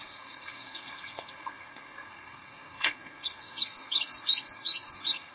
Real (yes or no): no